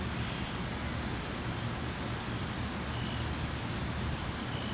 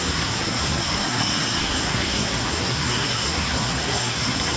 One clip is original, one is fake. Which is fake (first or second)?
second